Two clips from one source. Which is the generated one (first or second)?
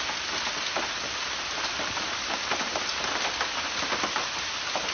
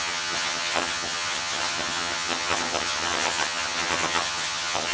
second